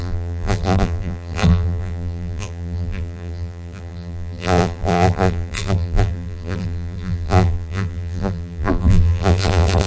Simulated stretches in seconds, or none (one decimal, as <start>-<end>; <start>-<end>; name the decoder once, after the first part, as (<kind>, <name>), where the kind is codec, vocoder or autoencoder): 0.0-9.9 (vocoder, BigVGAN v2)